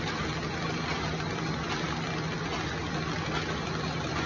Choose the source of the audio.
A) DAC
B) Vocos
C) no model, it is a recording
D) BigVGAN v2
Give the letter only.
C